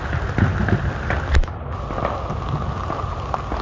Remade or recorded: recorded